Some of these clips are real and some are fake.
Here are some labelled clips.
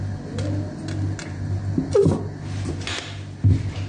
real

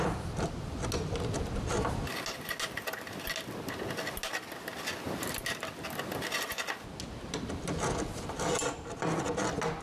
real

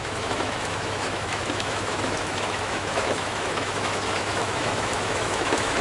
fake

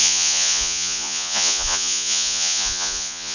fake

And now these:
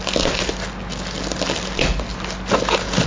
real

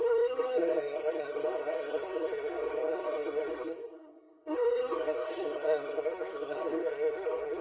fake